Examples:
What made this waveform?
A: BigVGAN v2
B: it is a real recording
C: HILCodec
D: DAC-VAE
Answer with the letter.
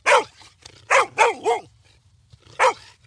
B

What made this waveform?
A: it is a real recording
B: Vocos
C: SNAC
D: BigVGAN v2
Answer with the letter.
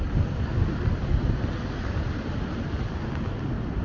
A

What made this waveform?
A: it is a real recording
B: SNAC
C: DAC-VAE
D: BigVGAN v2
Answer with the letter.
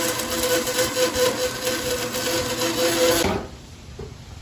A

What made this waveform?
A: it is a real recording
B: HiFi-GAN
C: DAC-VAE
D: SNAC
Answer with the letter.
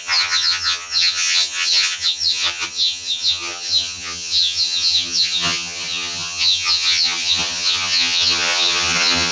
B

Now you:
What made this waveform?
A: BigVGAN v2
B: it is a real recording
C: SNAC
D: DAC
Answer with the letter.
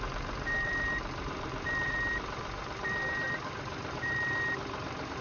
A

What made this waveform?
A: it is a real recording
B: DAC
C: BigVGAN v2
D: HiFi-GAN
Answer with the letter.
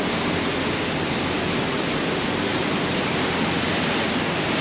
A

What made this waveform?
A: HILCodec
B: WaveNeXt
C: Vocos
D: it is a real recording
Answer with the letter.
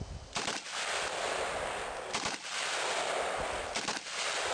D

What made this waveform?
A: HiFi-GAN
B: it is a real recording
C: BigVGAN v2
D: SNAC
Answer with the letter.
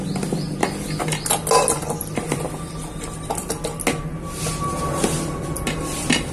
B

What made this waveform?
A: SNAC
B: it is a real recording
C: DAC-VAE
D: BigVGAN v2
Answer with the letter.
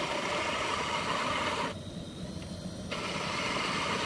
B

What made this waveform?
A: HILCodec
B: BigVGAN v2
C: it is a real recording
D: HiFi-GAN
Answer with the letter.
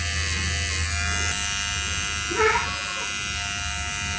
C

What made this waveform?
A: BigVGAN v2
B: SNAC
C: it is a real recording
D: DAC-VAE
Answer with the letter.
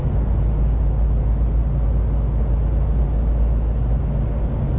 C